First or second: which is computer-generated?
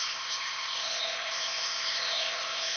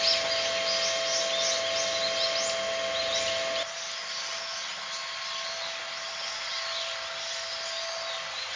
first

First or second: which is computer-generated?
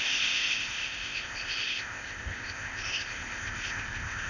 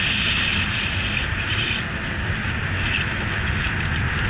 first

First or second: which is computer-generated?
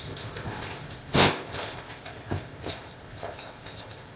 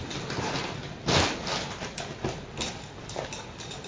first